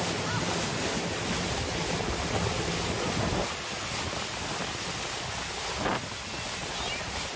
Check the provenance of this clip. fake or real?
real